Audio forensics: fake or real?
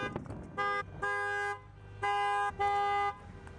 real